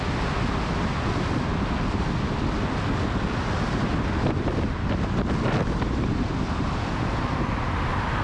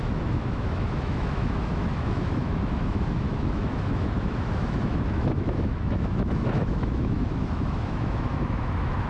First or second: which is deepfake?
second